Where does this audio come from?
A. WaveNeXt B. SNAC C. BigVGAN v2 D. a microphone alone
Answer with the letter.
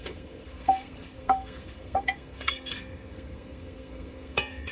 B